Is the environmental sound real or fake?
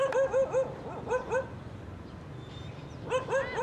real